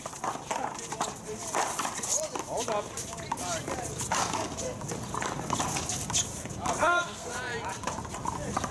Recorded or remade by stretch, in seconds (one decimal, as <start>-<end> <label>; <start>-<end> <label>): 0.0-6.8 recorded; 6.8-7.3 remade; 7.3-8.7 recorded

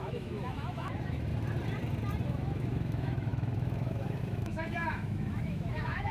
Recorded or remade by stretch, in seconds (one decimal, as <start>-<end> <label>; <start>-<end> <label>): 0.0-1.3 remade; 1.3-2.2 recorded; 2.2-6.1 remade

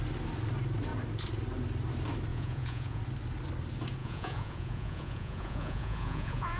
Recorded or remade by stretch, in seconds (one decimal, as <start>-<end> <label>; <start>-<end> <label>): 0.0-2.3 recorded; 2.3-3.0 remade; 3.0-4.0 recorded; 4.0-6.6 remade

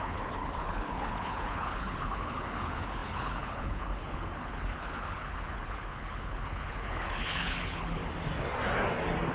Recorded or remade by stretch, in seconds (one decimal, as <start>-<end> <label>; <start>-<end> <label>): 0.0-8.0 remade; 8.0-9.3 recorded

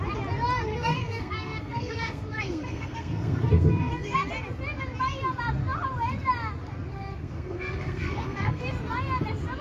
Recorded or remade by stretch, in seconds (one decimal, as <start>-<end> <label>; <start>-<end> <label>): 0.0-0.7 recorded; 0.7-4.3 remade; 4.3-6.9 recorded; 6.9-8.6 remade; 8.6-9.6 recorded